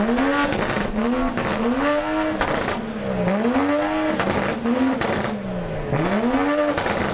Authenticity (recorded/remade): recorded